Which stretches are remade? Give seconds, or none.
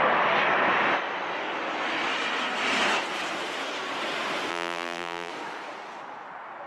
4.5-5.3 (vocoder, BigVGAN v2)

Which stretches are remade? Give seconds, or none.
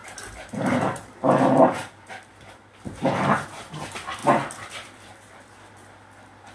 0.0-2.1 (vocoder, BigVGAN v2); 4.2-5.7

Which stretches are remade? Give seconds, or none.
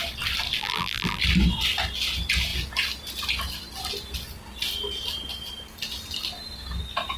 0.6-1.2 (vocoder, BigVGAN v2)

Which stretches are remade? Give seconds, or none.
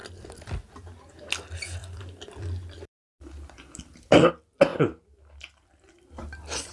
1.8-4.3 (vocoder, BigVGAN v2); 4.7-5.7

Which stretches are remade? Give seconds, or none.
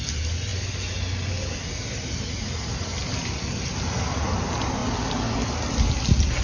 none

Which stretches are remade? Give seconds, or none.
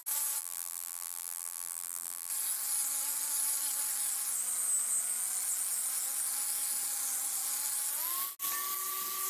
0.4-2.3 (vocoder, BigVGAN v2)